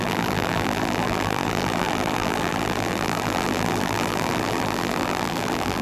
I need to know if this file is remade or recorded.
remade